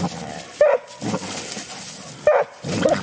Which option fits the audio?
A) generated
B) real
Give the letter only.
B